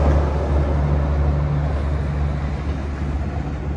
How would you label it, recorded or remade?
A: recorded